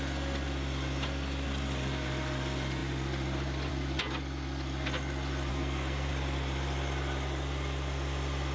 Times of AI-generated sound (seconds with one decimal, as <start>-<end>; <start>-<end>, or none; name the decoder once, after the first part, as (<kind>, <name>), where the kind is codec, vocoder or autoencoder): 5.5-6.1 (codec, SNAC)